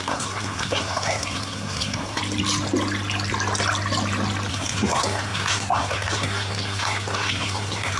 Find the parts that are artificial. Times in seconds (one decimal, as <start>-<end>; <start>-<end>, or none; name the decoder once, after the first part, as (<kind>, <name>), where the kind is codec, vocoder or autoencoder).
0.0-2.2 (codec, SNAC); 4.5-8.0